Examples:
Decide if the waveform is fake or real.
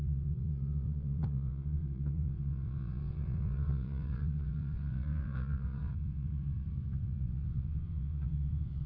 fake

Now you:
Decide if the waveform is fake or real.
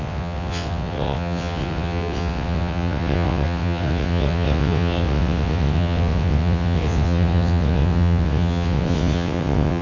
fake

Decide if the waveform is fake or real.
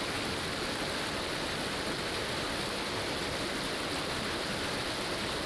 real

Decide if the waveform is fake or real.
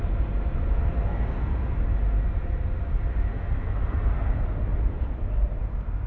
real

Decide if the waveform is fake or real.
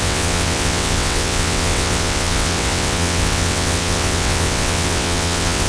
fake